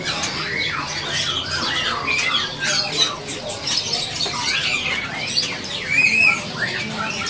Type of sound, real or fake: real